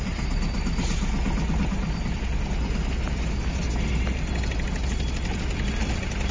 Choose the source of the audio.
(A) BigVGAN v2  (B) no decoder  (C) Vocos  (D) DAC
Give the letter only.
B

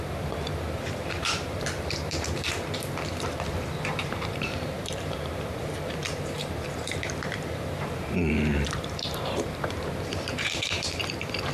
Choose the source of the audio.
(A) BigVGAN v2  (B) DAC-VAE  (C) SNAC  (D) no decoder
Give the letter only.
A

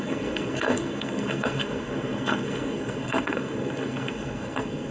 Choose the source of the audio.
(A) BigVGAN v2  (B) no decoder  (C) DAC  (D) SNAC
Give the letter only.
D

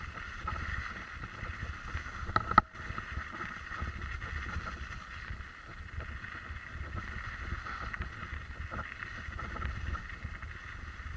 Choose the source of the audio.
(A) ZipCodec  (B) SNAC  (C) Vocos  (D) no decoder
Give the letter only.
D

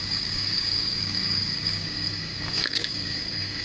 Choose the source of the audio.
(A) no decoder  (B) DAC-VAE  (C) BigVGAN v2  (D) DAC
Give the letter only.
D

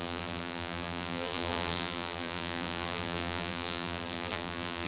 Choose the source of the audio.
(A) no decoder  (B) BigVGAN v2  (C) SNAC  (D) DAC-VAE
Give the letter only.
B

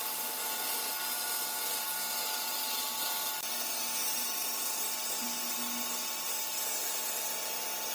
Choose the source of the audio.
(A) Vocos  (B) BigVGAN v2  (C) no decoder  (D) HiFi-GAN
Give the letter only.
C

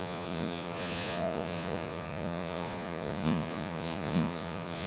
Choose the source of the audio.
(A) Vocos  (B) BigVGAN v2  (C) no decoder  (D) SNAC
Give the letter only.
A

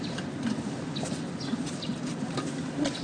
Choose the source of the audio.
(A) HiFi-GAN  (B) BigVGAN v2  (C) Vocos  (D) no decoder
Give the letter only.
D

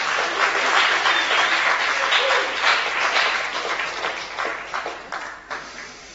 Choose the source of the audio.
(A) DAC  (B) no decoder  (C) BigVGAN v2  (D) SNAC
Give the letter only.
C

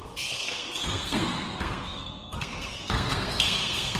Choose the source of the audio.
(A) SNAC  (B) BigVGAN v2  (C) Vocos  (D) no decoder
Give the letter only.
A